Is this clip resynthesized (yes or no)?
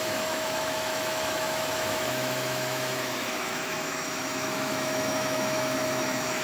yes